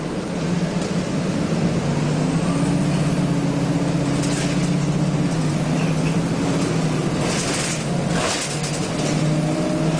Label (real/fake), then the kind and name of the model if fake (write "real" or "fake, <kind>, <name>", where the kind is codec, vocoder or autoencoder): real